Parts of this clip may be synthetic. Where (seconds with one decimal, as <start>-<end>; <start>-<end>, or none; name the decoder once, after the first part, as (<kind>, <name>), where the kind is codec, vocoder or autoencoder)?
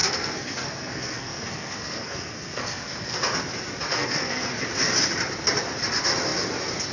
0.0-3.2 (codec, SNAC); 3.9-4.6